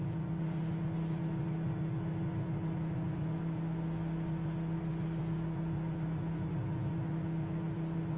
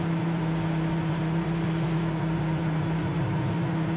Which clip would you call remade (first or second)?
second